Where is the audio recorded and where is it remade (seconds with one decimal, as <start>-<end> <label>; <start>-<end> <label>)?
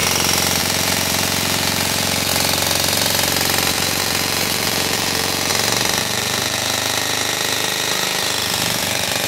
0.0-0.6 recorded; 0.6-2.3 remade; 2.3-3.7 recorded; 3.7-5.5 remade; 5.5-6.0 recorded; 6.0-9.3 remade